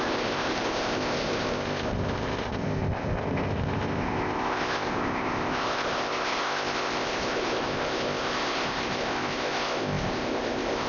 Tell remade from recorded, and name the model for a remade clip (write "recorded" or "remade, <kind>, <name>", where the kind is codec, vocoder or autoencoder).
remade, codec, ZipCodec